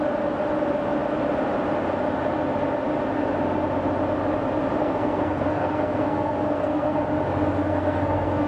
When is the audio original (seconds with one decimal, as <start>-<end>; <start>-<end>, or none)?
0.0-4.8; 7.0-7.6